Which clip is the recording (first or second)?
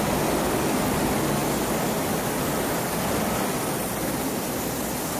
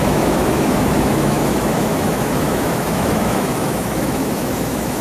first